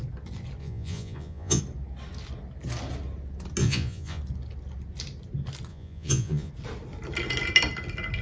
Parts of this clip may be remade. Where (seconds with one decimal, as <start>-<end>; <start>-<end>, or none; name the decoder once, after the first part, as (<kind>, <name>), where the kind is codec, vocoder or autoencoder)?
0.6-1.6 (vocoder, Vocos); 3.6-4.2; 5.7-6.5